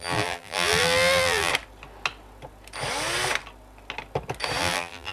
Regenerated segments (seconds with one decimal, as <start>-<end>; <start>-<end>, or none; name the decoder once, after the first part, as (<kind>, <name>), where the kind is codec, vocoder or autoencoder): 0.0-1.5 (vocoder, BigVGAN v2); 4.6-5.1

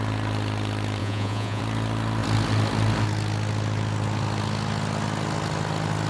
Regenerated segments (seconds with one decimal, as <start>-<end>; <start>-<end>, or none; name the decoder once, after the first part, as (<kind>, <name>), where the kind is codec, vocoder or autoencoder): 1.0-1.6 (vocoder, Vocos)

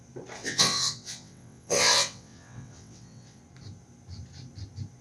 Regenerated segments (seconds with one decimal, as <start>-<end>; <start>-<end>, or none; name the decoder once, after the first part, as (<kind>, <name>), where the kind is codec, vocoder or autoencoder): 0.4-3.4 (vocoder, WaveNeXt)

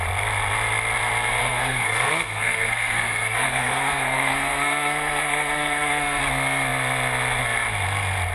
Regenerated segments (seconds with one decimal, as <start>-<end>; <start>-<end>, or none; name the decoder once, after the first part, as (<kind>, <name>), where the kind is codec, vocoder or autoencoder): 1.4-6.2 (codec, SNAC)

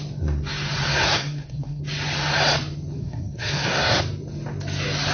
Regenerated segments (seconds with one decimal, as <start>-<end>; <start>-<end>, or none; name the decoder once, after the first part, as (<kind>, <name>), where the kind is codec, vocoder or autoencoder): 0.9-1.8 (codec, SNAC); 3.0-4.0

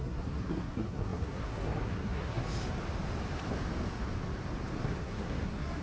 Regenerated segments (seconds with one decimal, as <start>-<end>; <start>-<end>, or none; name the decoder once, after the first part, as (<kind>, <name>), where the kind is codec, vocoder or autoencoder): 0.0-2.4 (codec, SNAC); 4.8-5.8